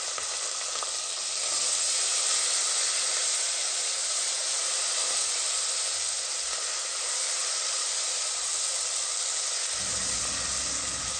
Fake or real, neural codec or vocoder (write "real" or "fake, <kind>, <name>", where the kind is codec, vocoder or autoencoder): real